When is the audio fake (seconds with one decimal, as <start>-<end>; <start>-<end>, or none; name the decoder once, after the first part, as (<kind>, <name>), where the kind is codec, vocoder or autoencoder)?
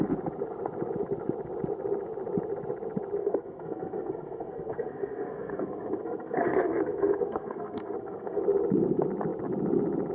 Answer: 3.2-8.4 (codec, SNAC)